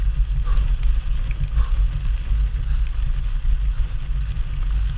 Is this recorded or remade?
recorded